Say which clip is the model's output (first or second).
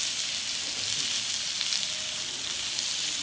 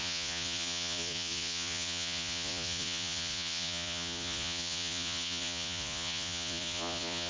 second